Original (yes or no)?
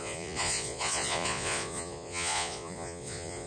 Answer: no